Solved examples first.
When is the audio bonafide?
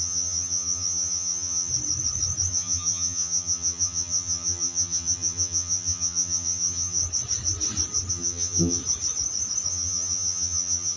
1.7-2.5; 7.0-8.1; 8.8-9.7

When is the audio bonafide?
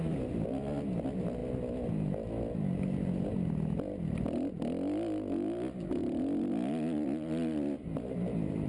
0.0-6.0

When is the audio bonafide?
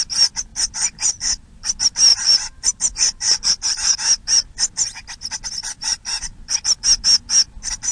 0.0-0.5; 1.4-2.1; 3.7-5.6; 6.3-7.9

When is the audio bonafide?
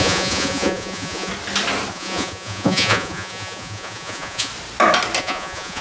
1.3-1.9; 4.5-5.2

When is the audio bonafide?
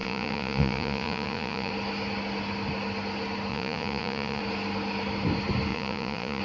1.7-3.5; 4.4-5.7